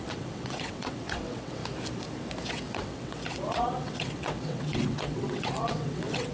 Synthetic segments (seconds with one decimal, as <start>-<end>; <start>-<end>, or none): 0.0-1.6; 2.5-6.3